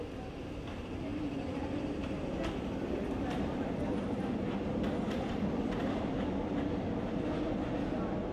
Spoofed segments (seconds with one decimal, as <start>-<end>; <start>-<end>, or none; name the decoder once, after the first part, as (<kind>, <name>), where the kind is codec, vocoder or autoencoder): 1.1-6.1 (vocoder, BigVGAN v2)